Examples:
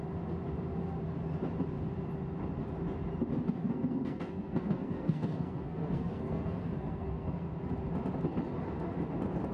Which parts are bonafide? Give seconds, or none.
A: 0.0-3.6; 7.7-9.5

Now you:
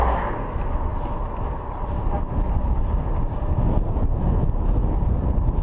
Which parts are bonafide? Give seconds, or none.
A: 0.0-5.6

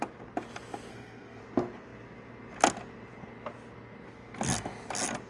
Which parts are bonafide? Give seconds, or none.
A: 0.0-0.9; 1.4-5.3